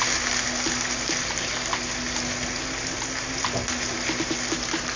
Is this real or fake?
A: fake